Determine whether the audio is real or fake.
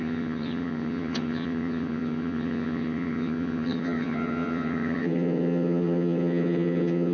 fake